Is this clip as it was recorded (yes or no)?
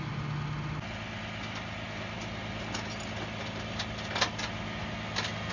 yes